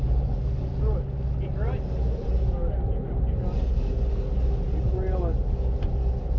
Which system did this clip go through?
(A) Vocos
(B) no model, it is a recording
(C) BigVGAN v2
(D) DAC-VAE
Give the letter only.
B